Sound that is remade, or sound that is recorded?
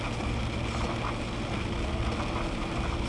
recorded